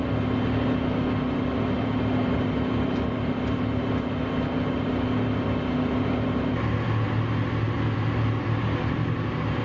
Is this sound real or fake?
real